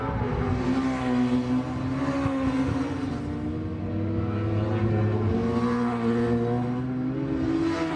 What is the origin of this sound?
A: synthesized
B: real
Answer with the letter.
B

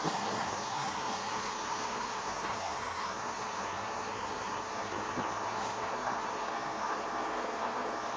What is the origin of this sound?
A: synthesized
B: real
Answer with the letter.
A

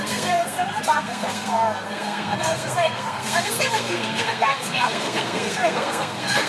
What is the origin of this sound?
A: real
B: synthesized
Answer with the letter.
B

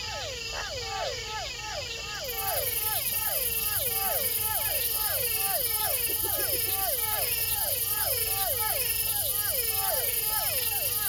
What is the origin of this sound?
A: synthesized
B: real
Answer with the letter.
B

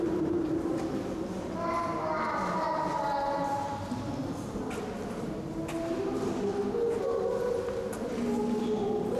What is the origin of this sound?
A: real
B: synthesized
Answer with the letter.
A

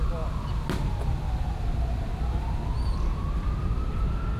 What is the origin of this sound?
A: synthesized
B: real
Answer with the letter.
B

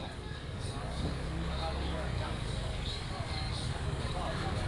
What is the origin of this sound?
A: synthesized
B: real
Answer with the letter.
A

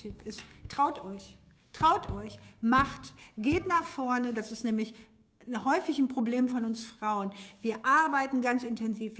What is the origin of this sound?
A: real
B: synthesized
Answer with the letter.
B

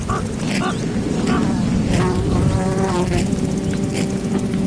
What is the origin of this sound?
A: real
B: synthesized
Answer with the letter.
A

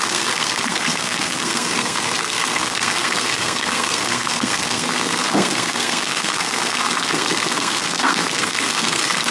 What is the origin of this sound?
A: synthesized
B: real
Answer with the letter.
A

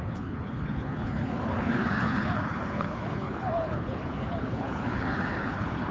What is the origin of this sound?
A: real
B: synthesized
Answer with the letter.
B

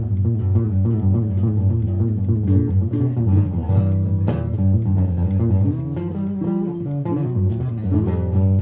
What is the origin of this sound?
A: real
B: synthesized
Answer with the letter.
A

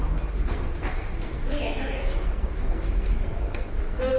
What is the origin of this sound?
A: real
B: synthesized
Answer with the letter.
B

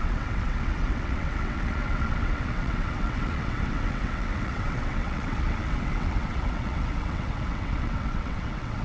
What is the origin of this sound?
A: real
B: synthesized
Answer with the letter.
B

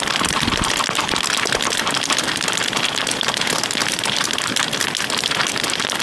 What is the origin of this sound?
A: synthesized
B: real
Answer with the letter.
A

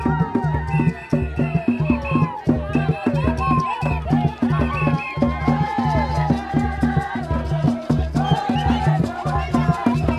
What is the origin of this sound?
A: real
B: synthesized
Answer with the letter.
A